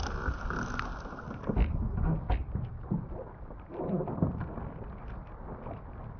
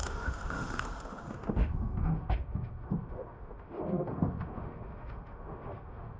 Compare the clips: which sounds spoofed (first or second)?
second